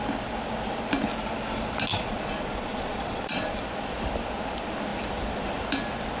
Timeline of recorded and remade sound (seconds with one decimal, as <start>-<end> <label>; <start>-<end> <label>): 0.0-1.9 recorded; 1.9-3.6 remade; 3.6-6.2 recorded